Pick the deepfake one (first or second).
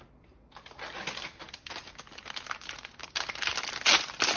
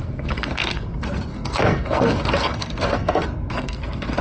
second